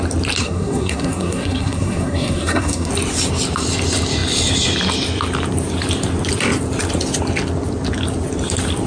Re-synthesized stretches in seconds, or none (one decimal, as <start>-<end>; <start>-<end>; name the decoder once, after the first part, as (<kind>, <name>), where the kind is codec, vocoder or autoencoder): 0.4-2.9 (codec, SNAC)